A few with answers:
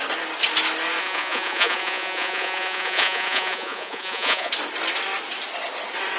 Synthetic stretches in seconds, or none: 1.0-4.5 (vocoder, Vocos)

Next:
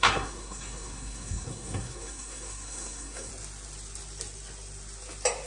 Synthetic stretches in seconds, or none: 0.0-3.3 (codec, SNAC)

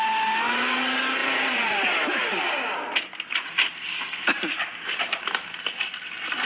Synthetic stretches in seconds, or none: 1.2-5.0 (vocoder, BigVGAN v2)